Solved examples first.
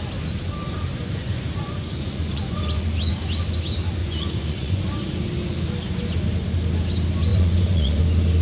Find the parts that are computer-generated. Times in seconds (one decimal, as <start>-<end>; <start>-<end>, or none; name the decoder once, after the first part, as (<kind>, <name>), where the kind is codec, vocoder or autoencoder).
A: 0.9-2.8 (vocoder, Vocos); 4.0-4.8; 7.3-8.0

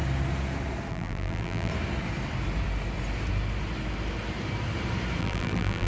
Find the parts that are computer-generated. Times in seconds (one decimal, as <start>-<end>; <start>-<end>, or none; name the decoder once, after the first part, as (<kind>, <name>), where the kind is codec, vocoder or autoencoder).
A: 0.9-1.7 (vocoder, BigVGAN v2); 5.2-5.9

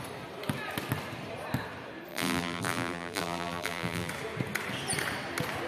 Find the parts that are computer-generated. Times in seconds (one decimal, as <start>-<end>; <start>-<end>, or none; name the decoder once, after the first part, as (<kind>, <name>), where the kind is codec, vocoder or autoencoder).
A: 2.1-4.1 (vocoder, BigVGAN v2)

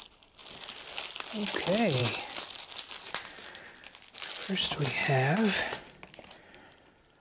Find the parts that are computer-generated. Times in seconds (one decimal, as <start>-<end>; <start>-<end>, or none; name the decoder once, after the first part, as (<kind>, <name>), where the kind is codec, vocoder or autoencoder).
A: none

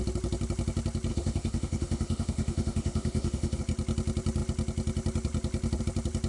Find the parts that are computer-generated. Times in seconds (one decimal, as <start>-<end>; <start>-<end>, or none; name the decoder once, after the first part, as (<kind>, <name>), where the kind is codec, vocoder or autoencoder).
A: 1.1-3.6 (autoencoder, DAC-VAE)

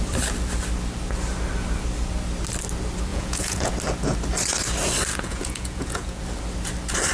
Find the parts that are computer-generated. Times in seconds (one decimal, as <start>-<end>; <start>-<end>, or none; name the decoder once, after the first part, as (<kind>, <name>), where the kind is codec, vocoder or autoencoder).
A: 3.1-3.7 (vocoder, Vocos); 5.1-6.2

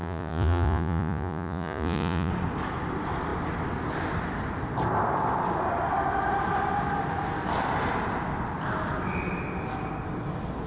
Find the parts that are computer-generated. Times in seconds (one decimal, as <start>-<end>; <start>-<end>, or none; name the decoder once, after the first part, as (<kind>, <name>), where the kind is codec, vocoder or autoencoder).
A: 0.0-2.3 (vocoder, Vocos)

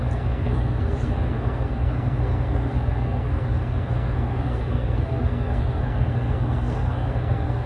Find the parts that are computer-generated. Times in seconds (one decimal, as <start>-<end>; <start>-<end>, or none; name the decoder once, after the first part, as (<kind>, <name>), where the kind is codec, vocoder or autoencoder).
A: 0.0-7.7 (codec, SNAC)